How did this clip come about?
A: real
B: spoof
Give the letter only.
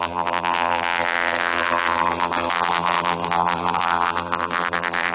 B